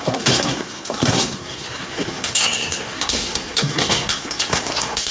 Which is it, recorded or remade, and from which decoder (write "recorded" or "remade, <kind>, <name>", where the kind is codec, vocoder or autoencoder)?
remade, codec, SNAC